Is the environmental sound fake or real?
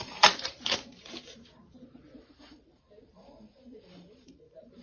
fake